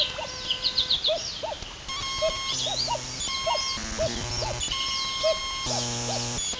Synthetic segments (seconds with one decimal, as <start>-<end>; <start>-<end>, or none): none